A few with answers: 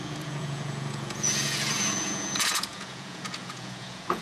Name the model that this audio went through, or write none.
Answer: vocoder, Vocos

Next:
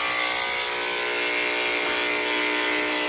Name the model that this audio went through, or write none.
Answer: none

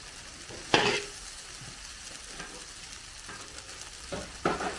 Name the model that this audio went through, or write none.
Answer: none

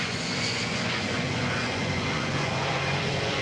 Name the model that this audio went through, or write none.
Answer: vocoder, Vocos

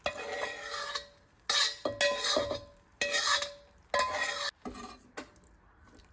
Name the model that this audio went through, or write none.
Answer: none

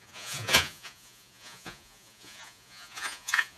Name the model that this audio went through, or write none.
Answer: vocoder, Vocos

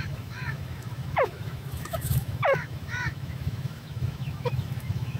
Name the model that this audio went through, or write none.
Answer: autoencoder, DAC-VAE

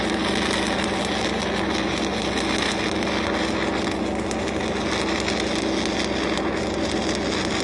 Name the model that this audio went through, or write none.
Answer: none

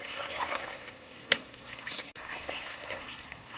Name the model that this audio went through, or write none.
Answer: codec, SNAC